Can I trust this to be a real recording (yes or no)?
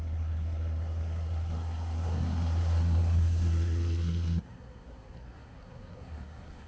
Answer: no